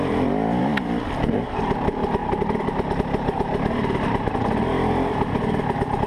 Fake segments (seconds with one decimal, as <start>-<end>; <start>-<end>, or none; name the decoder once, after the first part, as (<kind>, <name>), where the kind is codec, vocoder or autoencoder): 0.0-0.6 (vocoder, BigVGAN v2); 1.5-4.7; 5.6-6.1